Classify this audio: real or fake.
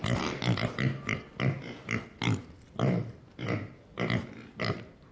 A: real